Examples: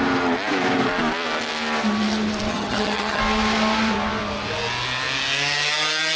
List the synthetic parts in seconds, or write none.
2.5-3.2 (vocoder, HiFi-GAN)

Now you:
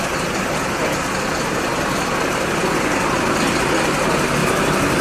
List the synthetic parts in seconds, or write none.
4.4-5.0 (vocoder, BigVGAN v2)

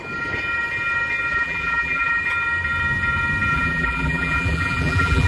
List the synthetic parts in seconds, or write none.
1.3-2.2 (vocoder, BigVGAN v2); 3.5-5.3